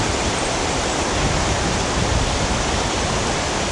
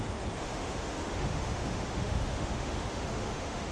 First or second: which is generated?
second